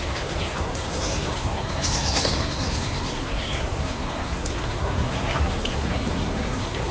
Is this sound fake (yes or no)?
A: yes